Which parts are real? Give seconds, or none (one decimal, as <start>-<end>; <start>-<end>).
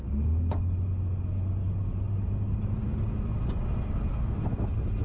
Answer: 0.0-5.0